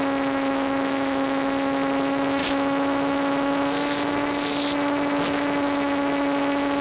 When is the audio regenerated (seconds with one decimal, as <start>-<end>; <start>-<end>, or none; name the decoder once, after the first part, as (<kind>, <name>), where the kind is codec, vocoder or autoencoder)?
none